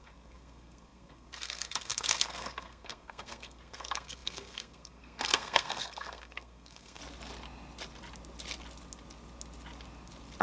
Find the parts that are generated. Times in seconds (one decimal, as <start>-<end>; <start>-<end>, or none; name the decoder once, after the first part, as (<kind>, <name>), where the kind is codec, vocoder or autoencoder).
0.0-7.0 (codec, SNAC)